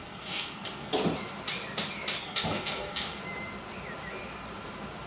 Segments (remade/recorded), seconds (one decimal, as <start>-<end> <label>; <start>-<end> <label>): 0.0-0.9 remade; 0.9-2.2 recorded; 2.2-3.2 remade; 3.2-5.1 recorded